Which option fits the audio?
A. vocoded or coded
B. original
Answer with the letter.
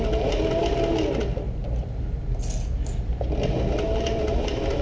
B